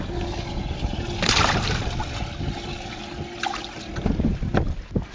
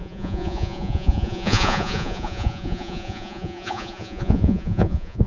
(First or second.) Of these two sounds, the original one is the first